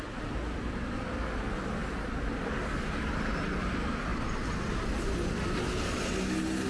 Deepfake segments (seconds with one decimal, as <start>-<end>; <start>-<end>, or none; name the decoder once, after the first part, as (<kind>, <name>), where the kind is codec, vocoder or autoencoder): none